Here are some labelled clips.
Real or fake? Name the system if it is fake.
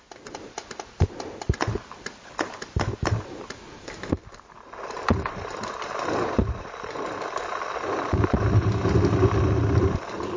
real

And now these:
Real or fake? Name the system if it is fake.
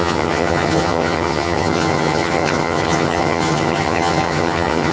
fake, vocoder, HiFi-GAN